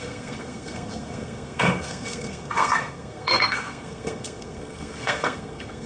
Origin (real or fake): fake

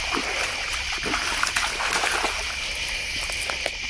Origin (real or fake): real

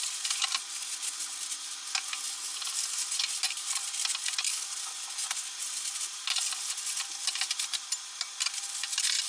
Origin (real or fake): real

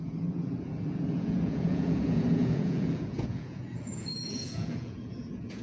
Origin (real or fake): fake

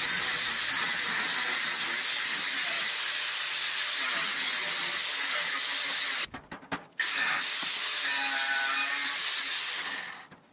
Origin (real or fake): real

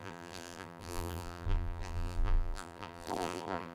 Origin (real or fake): fake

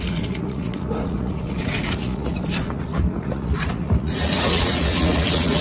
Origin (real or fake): fake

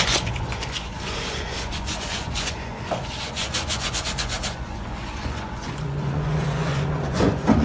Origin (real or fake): fake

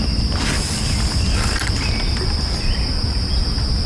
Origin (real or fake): real